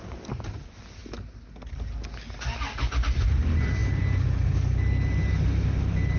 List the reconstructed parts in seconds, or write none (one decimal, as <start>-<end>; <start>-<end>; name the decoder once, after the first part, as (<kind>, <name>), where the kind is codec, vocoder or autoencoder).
none